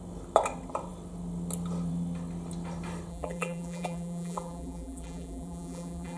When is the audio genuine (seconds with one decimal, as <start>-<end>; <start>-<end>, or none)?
0.0-3.1

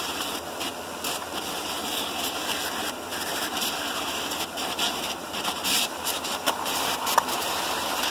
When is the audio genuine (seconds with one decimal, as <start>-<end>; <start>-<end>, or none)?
0.7-1.6

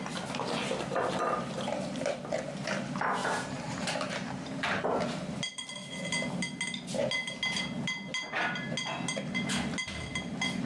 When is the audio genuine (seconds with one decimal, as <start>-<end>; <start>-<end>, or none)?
0.0-3.2; 4.8-10.7

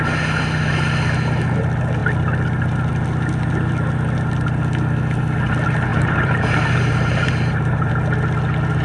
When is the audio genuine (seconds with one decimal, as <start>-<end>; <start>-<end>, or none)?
0.0-5.9; 7.9-8.8